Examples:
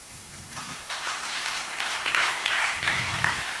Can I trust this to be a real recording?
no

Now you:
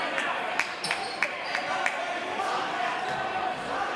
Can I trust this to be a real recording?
yes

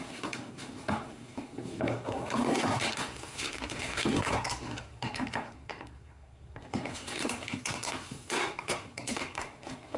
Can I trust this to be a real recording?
no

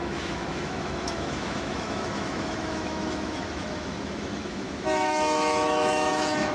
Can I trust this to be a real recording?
no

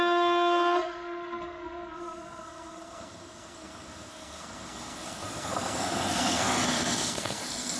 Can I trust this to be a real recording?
no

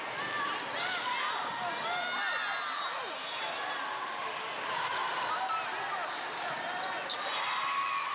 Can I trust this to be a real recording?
yes